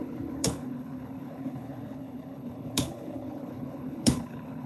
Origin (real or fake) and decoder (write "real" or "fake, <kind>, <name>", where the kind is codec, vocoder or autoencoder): fake, codec, HILCodec